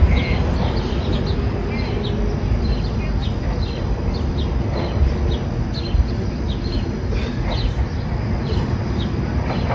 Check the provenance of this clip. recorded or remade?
recorded